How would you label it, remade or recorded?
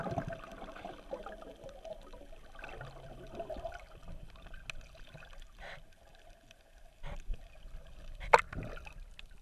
recorded